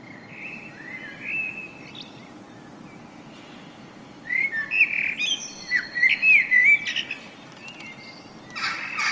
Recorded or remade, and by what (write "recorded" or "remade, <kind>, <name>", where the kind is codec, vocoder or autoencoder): recorded